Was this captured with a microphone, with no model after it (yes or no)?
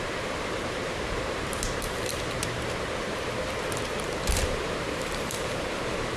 no